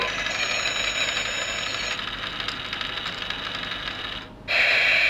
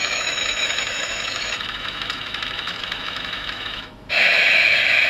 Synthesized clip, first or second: second